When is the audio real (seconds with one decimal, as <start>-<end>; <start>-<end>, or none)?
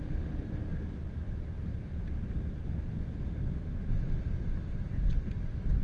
0.0-5.8